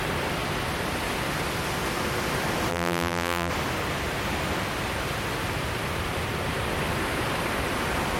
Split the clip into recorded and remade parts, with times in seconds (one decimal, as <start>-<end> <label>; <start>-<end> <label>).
0.0-2.7 recorded; 2.7-3.5 remade; 3.5-8.2 recorded